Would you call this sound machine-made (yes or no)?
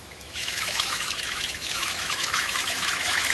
yes